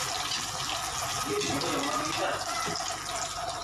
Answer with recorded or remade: recorded